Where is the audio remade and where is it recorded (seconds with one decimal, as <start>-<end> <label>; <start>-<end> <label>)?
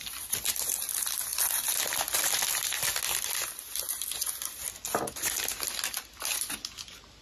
0.0-7.2 recorded